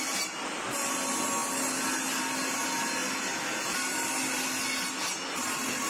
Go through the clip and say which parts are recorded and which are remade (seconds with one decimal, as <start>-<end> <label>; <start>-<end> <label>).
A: 0.0-5.9 recorded